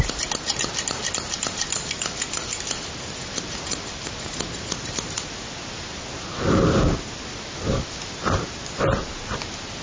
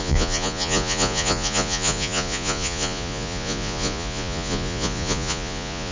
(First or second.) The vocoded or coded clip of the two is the second